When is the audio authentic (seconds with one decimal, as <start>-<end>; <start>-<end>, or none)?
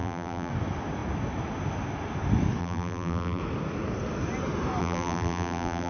0.5-2.6; 3.4-4.8